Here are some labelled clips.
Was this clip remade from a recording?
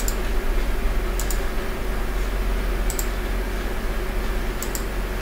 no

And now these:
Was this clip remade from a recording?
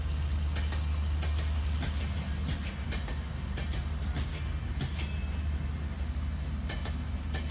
no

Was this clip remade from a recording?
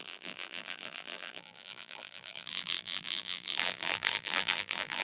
yes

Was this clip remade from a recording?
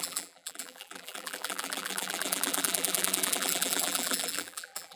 yes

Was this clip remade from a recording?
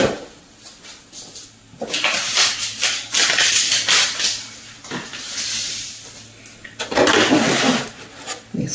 no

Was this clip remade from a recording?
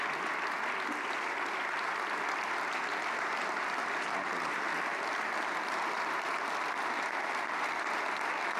no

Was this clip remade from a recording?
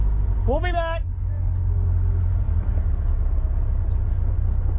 no